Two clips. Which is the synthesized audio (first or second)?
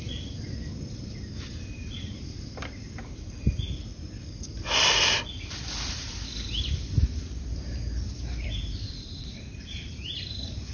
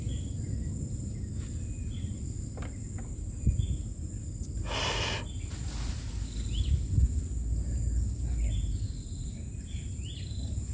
first